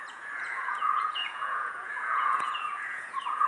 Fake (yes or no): yes